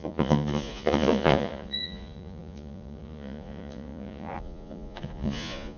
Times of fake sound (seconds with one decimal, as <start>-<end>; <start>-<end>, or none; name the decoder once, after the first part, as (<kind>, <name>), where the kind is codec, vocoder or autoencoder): 0.0-5.8 (vocoder, Vocos)